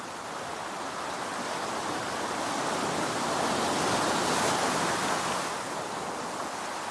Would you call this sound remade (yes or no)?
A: no